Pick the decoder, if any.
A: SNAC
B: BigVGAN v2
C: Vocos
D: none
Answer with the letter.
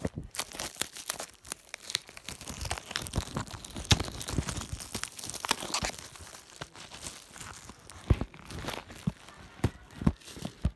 D